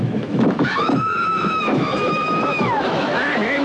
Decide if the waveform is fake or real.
fake